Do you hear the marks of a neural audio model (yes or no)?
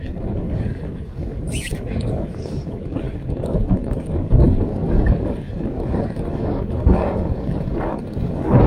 yes